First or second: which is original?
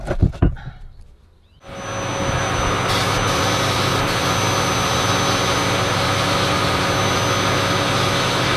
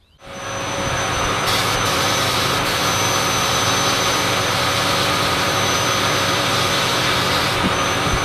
first